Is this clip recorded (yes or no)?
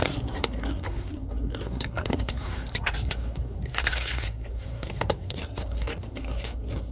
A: no